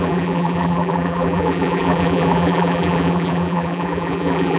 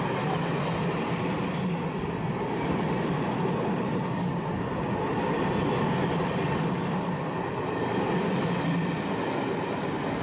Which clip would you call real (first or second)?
second